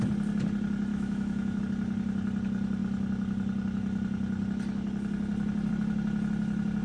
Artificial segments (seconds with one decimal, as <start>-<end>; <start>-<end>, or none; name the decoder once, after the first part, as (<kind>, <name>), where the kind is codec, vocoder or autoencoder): 0.9-1.6 (autoencoder, DAC-VAE)